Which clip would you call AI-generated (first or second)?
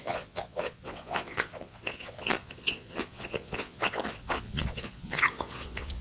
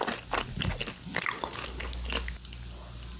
first